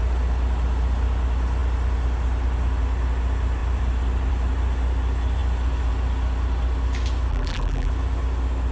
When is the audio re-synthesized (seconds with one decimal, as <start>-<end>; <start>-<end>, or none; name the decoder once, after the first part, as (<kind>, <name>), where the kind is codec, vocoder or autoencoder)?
7.3-7.9 (vocoder, BigVGAN v2)